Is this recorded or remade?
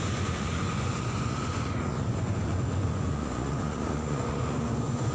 remade